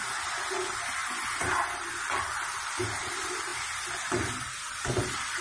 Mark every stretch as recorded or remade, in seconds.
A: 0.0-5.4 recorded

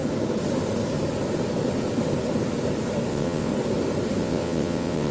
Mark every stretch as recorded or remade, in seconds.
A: 0.0-3.1 recorded; 3.1-3.5 remade; 3.5-4.2 recorded; 4.2-5.1 remade

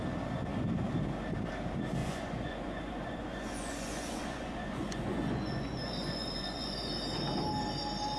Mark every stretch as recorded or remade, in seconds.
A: 0.0-2.0 recorded; 2.0-6.9 remade; 6.9-8.2 recorded

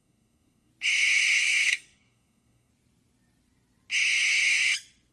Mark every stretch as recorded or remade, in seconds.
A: 0.0-0.7 remade; 0.7-1.4 recorded; 1.4-2.7 remade; 2.7-5.1 recorded

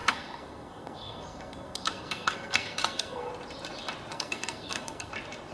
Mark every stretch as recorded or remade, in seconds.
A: 0.0-3.3 remade; 3.3-4.1 recorded; 4.1-5.1 remade; 5.1-5.5 recorded